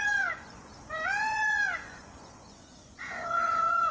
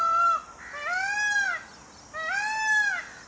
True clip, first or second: second